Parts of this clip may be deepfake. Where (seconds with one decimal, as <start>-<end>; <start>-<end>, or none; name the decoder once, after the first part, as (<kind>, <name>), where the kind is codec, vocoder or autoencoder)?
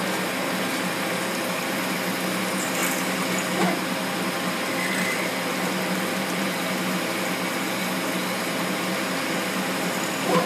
5.5-6.5 (vocoder, BigVGAN v2)